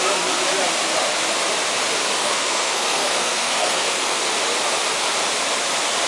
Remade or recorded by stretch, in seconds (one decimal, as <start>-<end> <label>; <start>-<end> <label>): 0.0-2.2 recorded; 2.2-4.2 remade; 4.2-6.1 recorded